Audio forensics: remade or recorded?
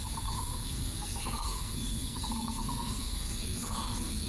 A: remade